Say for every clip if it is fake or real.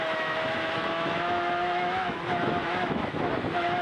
fake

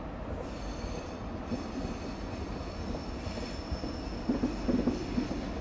real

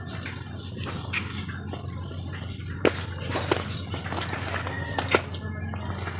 real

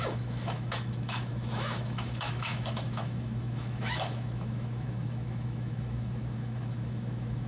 fake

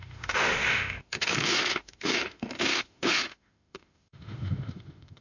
fake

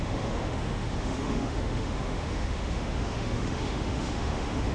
fake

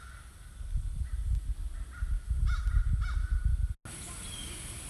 real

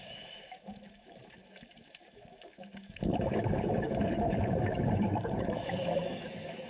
fake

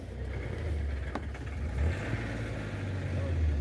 real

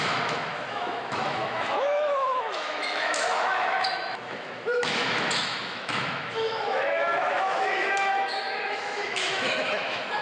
fake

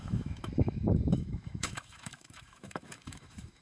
fake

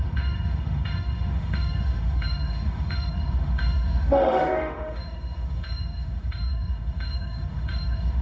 fake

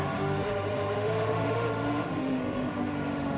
fake